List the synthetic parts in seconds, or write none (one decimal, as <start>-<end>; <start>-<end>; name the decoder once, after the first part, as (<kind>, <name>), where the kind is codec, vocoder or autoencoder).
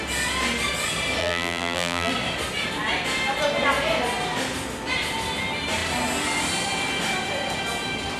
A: 1.2-2.1 (vocoder, BigVGAN v2)